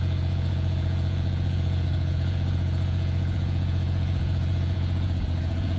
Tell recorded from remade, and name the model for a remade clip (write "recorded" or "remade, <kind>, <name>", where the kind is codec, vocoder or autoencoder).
remade, vocoder, Vocos